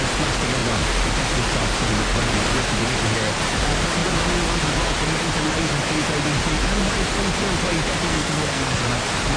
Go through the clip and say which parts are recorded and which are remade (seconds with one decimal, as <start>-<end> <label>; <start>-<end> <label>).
0.0-8.1 recorded; 8.1-8.8 remade; 8.8-9.4 recorded